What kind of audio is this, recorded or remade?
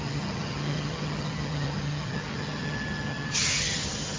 remade